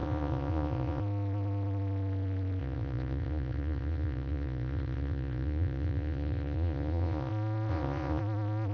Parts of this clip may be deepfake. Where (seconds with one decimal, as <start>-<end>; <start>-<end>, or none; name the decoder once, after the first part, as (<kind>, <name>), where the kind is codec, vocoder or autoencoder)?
0.0-1.0 (vocoder, Vocos); 2.6-7.3; 7.7-8.2

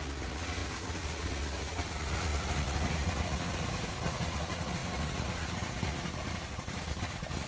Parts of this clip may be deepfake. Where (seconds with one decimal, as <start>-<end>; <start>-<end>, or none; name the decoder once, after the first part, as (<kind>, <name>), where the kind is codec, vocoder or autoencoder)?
0.0-7.5 (vocoder, Vocos)